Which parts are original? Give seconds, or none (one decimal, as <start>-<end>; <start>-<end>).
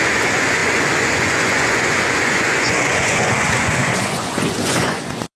none